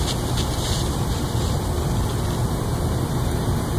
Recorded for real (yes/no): yes